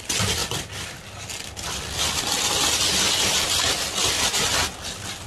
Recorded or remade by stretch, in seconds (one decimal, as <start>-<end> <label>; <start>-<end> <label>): 0.0-5.3 recorded

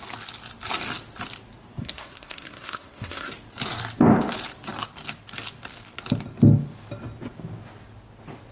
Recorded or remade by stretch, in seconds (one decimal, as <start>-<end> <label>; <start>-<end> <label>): 0.0-1.8 recorded; 1.8-3.3 remade; 3.3-8.5 recorded

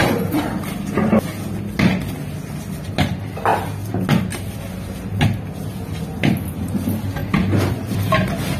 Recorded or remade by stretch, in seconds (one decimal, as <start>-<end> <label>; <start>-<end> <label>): 0.0-8.6 recorded